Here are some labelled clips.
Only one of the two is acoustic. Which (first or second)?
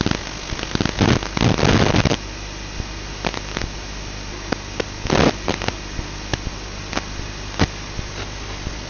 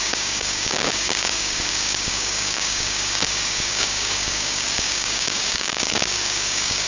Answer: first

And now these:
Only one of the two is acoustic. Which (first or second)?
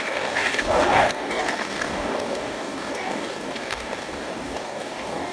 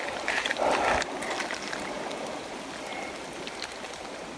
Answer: second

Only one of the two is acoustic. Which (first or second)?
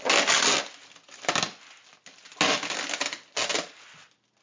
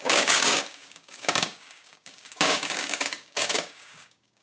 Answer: first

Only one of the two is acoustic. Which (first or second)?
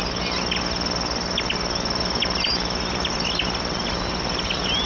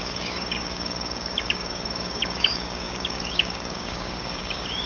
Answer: first